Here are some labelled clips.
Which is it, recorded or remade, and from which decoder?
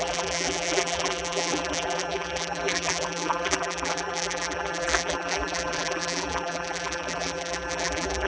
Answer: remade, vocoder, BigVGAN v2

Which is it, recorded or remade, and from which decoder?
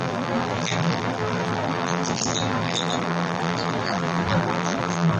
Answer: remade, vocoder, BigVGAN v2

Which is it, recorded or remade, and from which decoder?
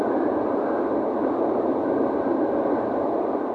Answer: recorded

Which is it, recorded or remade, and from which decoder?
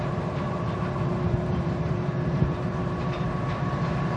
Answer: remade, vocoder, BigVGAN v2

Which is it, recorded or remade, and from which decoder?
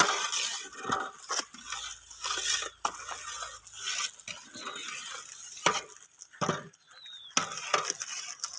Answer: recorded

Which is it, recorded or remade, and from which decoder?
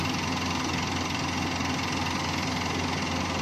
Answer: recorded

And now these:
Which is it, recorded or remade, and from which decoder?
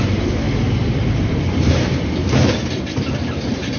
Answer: remade, vocoder, BigVGAN v2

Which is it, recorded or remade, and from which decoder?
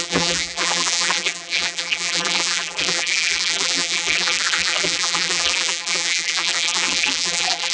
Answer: remade, vocoder, BigVGAN v2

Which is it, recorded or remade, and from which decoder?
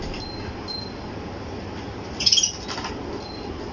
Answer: recorded